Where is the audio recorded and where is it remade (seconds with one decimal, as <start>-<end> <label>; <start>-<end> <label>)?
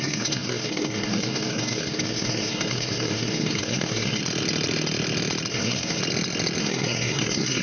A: 0.0-4.2 remade; 4.2-5.5 recorded; 5.5-6.0 remade; 6.0-6.6 recorded; 6.6-7.6 remade